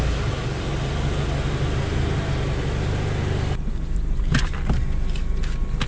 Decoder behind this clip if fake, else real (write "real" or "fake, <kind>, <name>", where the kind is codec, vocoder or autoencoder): real